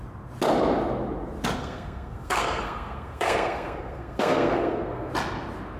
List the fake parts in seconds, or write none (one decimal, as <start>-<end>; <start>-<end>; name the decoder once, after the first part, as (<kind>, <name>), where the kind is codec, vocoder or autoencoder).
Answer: 1.6-5.1 (codec, SNAC)